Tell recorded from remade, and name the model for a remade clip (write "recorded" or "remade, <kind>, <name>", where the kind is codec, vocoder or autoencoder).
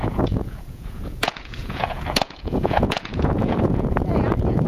remade, vocoder, Vocos